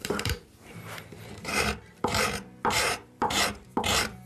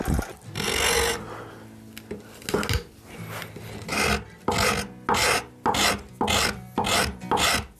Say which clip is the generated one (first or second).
first